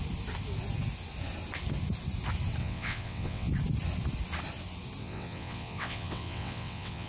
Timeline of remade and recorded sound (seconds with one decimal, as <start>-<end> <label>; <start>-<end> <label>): 0.0-2.6 recorded; 2.6-3.5 remade; 3.5-5.0 recorded; 5.0-7.1 remade